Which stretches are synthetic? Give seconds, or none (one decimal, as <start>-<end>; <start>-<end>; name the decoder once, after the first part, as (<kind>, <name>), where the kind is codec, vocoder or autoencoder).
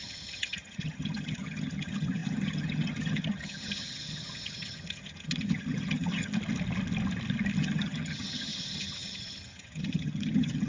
0.0-6.3 (vocoder, HiFi-GAN); 7.6-10.7